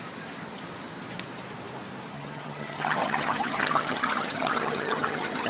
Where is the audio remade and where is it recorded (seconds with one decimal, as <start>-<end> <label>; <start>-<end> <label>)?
0.0-2.1 recorded; 2.1-5.5 remade